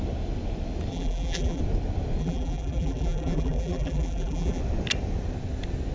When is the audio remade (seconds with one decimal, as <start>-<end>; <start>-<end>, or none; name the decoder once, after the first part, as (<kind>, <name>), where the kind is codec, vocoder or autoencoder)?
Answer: 0.9-1.6 (vocoder, BigVGAN v2); 2.2-4.6